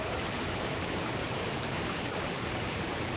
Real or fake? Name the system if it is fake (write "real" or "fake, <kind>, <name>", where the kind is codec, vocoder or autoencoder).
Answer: fake, vocoder, BigVGAN v2